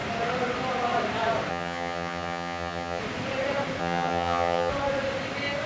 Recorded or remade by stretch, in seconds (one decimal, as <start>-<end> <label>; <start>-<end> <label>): 0.0-1.5 recorded; 1.5-3.0 remade; 3.0-3.8 recorded; 3.8-4.7 remade; 4.7-5.7 recorded